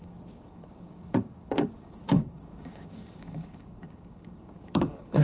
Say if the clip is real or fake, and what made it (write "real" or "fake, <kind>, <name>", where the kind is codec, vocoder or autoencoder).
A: fake, codec, DAC